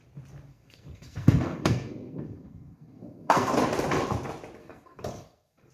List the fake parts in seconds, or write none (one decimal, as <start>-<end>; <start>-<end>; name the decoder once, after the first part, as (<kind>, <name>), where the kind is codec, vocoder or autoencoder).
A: 0.5-3.5 (codec, SNAC); 4.6-5.7

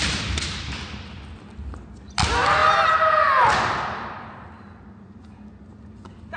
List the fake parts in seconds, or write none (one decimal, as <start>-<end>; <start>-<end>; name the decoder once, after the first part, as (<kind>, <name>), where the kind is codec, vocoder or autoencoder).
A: none

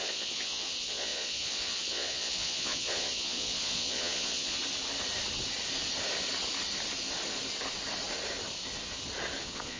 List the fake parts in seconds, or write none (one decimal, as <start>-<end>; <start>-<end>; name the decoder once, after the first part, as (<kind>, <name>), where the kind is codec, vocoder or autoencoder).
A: 0.0-4.6 (vocoder, Vocos); 9.4-9.8

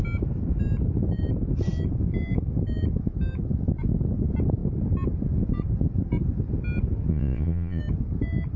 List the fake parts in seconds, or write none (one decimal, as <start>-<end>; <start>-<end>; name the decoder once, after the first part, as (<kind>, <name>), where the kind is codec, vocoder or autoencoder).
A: 7.1-7.8 (vocoder, Vocos)

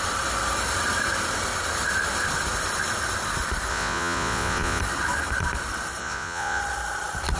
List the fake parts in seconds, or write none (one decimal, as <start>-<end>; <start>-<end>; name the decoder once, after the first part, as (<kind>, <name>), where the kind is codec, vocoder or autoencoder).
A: 3.7-4.8 (vocoder, Vocos); 6.0-6.6